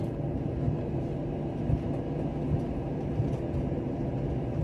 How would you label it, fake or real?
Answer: real